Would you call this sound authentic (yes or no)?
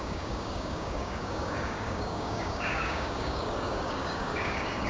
no